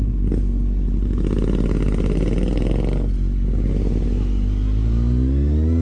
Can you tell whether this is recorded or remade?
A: recorded